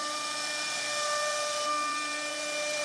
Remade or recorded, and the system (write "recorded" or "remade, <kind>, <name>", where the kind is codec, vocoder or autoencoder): remade, vocoder, BigVGAN v2